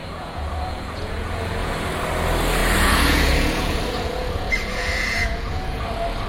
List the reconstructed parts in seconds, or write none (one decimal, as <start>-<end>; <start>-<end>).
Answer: 0.0-1.7; 2.6-5.8

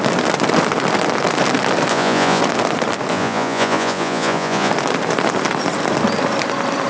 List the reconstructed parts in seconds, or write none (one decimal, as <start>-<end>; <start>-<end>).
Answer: 1.9-2.4; 3.1-4.7

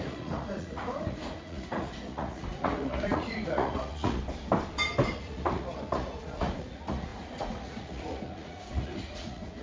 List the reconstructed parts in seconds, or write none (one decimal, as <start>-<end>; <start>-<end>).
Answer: 0.0-4.2; 5.1-9.6

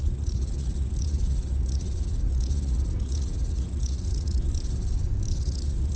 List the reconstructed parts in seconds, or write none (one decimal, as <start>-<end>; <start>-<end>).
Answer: 0.0-4.4; 5.4-6.0

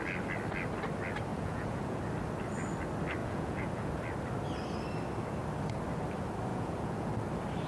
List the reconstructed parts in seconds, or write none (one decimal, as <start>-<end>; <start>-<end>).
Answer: 1.3-2.0; 3.2-3.9; 6.5-7.1